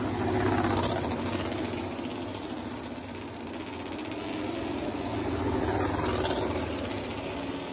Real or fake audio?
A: real